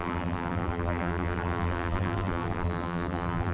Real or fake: fake